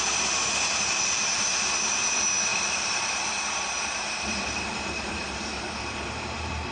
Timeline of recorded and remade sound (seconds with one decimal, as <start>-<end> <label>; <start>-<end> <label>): 0.0-2.5 recorded; 2.5-6.7 remade